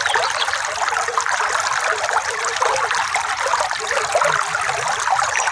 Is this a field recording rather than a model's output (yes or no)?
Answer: yes